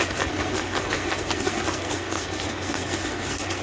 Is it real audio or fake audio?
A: fake